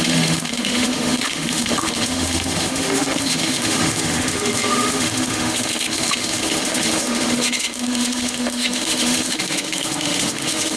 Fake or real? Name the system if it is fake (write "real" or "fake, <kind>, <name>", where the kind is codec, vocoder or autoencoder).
fake, autoencoder, DAC-VAE